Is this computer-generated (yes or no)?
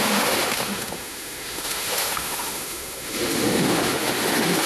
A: yes